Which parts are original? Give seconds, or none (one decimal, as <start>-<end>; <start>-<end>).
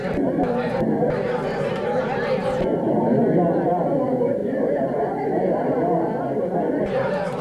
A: 0.0-7.4